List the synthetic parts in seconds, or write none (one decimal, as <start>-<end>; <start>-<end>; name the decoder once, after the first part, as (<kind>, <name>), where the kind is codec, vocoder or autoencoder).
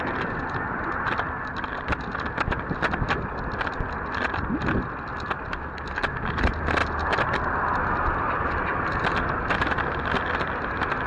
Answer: none